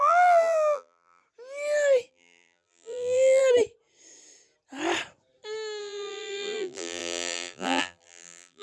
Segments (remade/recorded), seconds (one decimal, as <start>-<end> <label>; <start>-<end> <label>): 0.0-1.2 remade; 1.2-2.1 recorded; 2.1-3.4 remade; 3.4-5.8 recorded; 5.8-8.6 remade